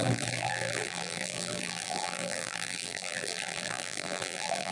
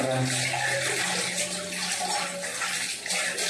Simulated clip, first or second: first